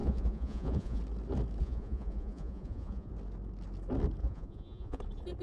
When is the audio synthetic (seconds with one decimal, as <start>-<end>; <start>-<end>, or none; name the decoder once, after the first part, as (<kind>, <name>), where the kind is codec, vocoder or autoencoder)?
0.0-1.0 (vocoder, Vocos); 1.6-3.1; 4.2-5.0